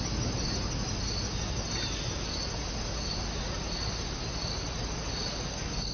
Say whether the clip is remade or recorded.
recorded